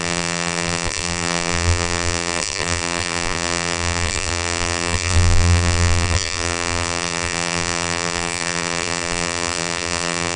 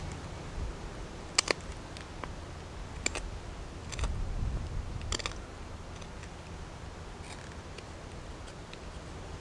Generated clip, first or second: first